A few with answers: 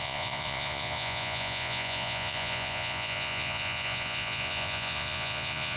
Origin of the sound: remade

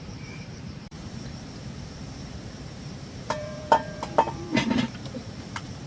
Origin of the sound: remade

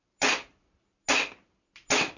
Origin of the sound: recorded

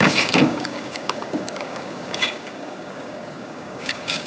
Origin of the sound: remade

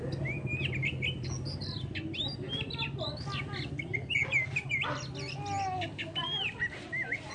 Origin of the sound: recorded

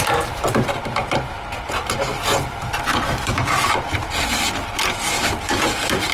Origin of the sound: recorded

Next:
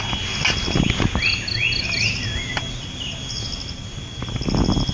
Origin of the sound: recorded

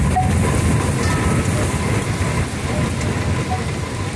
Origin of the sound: recorded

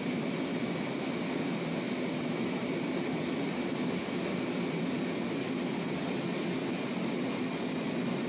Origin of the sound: recorded